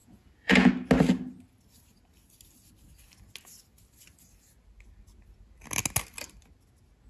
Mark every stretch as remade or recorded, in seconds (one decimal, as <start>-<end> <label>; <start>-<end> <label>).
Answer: 0.0-0.7 remade; 0.7-7.1 recorded